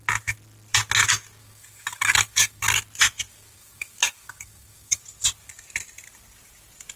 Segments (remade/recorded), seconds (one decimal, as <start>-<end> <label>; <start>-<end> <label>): 0.0-1.4 recorded; 1.4-2.6 remade; 2.6-3.3 recorded; 3.3-5.0 remade; 5.0-7.0 recorded